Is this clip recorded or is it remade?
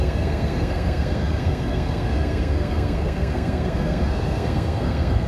remade